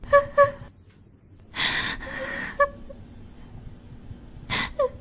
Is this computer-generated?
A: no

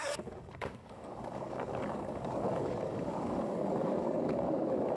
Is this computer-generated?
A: yes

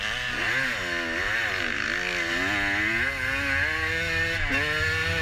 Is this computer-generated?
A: no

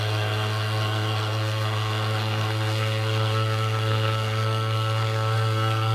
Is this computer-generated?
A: yes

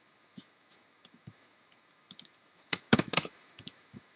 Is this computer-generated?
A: yes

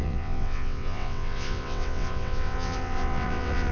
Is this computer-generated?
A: yes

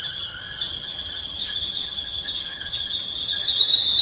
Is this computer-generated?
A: yes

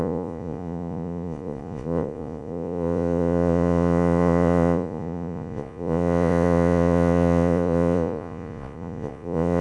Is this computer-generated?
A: yes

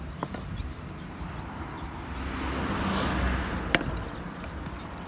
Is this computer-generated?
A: no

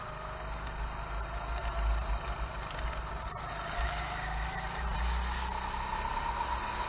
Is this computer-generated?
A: no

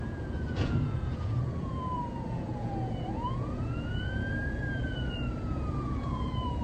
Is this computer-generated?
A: yes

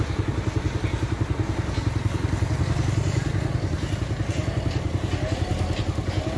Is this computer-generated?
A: no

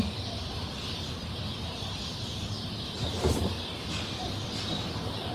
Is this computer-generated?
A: yes